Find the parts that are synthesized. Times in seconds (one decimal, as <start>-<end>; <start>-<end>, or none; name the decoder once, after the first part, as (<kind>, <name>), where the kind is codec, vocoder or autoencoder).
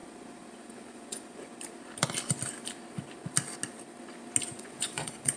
0.5-1.5 (vocoder, Vocos); 4.5-5.4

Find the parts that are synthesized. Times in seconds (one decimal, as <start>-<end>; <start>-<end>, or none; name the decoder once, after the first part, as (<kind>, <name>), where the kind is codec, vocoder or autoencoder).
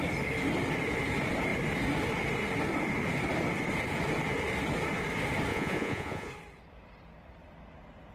5.5-6.3 (vocoder, Vocos)